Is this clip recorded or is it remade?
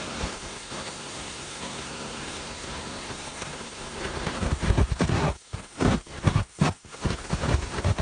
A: remade